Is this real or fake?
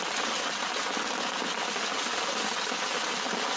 real